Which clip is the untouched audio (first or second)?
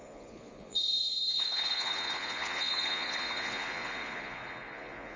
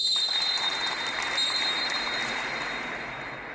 second